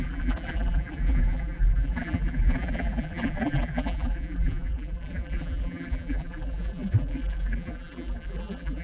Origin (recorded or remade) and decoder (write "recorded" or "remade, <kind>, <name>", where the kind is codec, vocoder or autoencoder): remade, vocoder, BigVGAN v2